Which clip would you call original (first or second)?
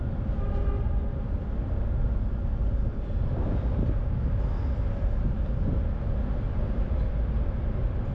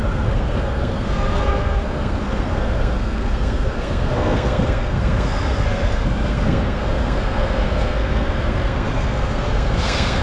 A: first